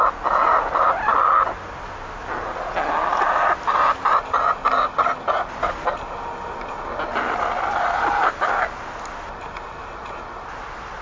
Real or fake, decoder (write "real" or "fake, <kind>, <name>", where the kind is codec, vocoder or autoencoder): real